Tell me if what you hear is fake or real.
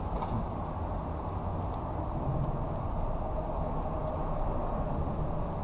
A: real